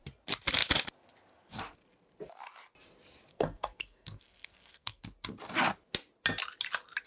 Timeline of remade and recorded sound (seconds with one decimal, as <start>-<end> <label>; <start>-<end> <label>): 0.0-3.3 recorded; 3.3-5.0 remade; 5.0-7.1 recorded